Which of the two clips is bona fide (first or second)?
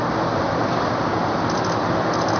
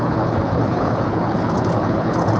first